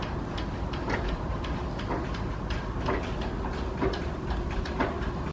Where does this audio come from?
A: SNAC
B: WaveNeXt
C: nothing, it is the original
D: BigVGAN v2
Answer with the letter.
C